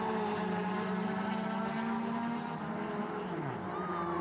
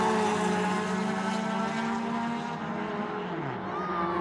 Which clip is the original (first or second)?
second